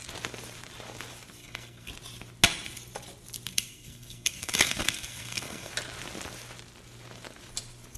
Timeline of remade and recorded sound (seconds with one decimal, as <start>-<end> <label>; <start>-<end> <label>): 0.0-1.4 recorded; 1.4-1.9 remade; 1.9-3.5 recorded; 3.5-5.7 remade; 5.7-8.0 recorded